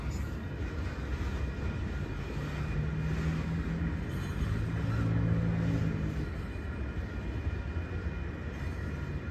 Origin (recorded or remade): recorded